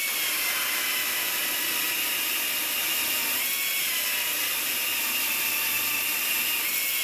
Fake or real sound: real